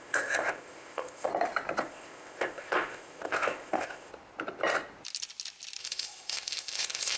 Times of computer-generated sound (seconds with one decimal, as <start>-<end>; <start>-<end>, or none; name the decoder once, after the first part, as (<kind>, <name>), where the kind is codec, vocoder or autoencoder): 0.0-1.3 (codec, ZipCodec); 1.8-4.1; 5.8-7.2